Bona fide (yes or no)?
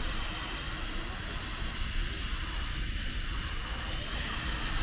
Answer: yes